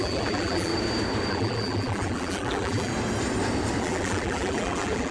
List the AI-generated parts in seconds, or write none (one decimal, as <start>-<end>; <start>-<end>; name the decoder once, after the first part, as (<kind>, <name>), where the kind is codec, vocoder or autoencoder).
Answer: 0.0-0.7 (vocoder, BigVGAN v2); 1.3-2.9; 3.8-5.1